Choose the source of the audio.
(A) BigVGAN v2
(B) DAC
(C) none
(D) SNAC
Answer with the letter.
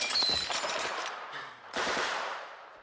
A